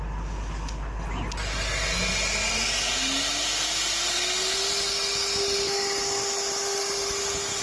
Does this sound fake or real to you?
real